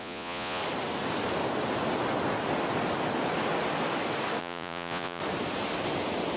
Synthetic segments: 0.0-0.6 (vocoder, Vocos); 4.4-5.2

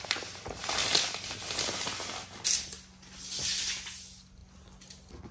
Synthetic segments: none

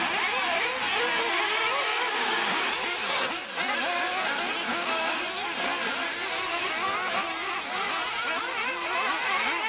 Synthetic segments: 1.9-2.7 (codec, DAC); 4.7-5.2

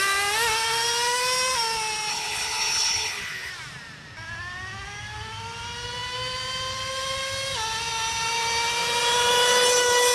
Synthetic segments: 2.1-3.5 (codec, HILCodec)

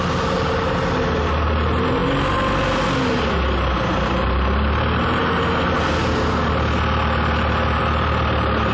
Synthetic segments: none

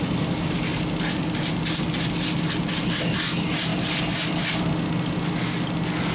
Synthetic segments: none